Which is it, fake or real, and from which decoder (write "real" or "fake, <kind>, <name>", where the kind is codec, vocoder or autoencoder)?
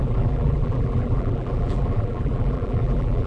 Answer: fake, vocoder, BigVGAN v2